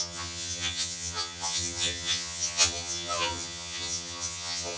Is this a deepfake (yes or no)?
yes